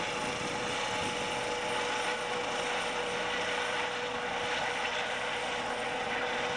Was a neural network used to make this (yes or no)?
no